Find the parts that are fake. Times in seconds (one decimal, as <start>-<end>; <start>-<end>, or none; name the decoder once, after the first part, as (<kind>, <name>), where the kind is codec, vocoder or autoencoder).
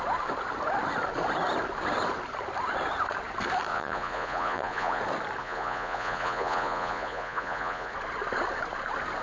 3.7-5.0 (vocoder, Vocos); 5.4-7.9